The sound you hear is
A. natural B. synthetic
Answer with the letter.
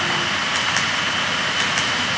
A